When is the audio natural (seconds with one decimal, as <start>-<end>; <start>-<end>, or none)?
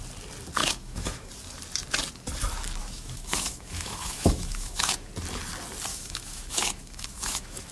0.0-0.6; 1.3-2.8; 5.1-5.9